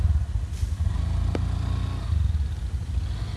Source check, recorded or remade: recorded